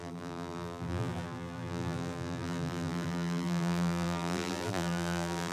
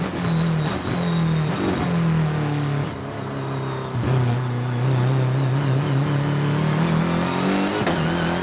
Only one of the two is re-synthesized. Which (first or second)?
first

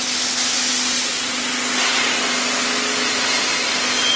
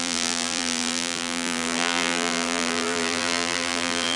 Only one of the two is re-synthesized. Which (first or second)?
second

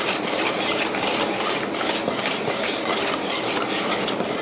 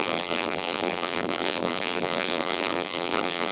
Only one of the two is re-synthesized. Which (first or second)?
second